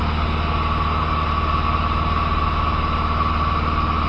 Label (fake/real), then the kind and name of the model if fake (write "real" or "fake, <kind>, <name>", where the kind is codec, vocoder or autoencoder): real